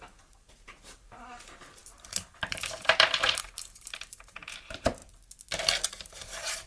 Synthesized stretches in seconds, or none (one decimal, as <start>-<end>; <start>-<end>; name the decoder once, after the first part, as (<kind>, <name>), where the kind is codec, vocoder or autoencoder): 0.0-5.0 (vocoder, BigVGAN v2); 5.9-6.7

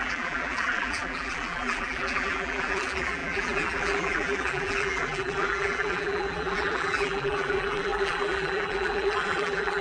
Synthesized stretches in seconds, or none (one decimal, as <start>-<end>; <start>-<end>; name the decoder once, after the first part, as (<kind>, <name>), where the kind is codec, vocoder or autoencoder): 0.0-9.8 (vocoder, BigVGAN v2)

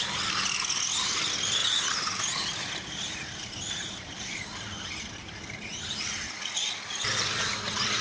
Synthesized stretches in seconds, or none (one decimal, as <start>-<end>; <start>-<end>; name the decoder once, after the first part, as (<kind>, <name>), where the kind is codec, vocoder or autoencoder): 1.6-6.4 (vocoder, BigVGAN v2)

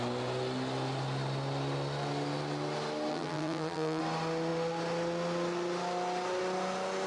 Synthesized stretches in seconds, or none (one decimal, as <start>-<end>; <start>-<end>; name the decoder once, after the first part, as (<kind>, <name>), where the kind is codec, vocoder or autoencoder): 3.1-4.0 (vocoder, BigVGAN v2)

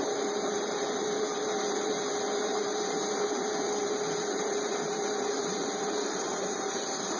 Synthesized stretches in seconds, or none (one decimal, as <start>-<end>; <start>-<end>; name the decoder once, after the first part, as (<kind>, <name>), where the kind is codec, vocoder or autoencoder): 0.0-7.2 (vocoder, BigVGAN v2)